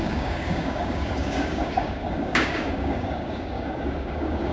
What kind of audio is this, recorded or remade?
remade